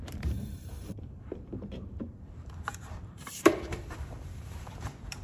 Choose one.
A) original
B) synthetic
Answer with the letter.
B